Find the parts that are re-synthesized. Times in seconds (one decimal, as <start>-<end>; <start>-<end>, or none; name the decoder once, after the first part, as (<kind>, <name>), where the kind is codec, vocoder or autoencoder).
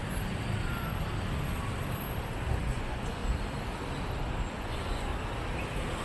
2.6-3.2 (vocoder, Vocos); 4.5-5.1